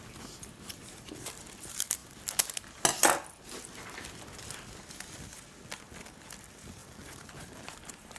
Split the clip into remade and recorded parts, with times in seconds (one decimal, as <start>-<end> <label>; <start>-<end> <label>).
0.0-6.8 recorded; 6.8-8.2 remade